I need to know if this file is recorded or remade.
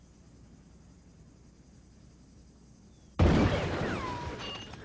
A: recorded